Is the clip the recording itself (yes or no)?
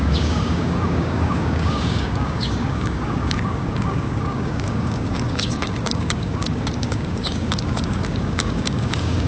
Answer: no